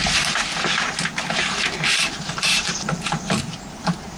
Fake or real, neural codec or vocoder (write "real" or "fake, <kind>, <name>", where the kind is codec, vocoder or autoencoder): fake, vocoder, BigVGAN v2